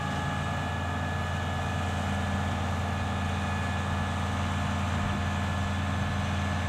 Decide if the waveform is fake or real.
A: real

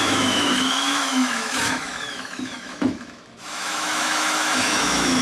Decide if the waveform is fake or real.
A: fake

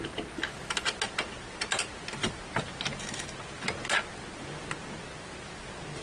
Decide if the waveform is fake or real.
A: real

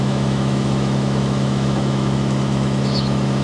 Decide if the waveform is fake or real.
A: fake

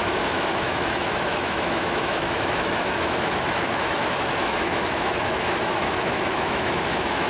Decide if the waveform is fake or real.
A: fake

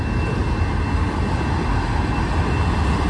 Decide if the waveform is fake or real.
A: real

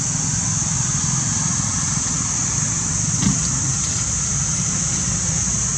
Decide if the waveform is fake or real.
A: real